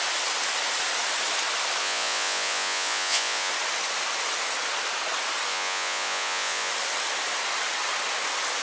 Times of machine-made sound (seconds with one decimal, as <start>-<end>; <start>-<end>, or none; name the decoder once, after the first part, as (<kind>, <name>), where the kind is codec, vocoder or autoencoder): 1.8-3.5 (vocoder, Vocos); 5.5-6.7